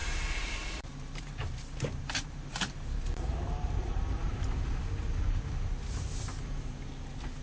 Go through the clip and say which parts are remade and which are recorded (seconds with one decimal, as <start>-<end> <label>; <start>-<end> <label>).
0.0-4.4 remade; 4.4-7.4 recorded